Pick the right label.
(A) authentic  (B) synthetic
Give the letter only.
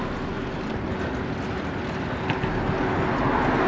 A